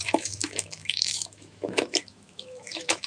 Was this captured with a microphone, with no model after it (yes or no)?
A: no